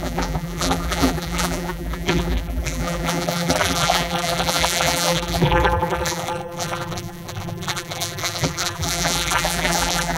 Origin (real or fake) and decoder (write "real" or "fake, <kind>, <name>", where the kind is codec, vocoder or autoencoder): fake, vocoder, BigVGAN v2